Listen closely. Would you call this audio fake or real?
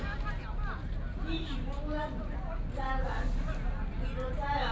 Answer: real